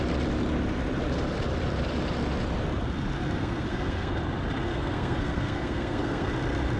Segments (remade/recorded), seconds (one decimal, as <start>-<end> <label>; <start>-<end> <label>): 0.0-3.4 recorded; 3.4-4.2 remade; 4.2-4.7 recorded; 4.7-6.3 remade; 6.3-6.8 recorded